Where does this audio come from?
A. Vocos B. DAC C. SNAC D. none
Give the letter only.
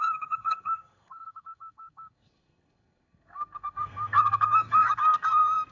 C